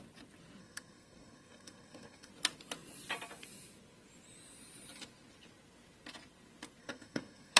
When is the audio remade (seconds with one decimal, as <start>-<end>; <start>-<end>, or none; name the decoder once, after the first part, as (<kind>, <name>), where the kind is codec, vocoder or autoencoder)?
0.6-2.3 (codec, SNAC); 6.8-7.6